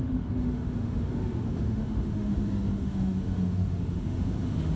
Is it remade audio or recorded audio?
remade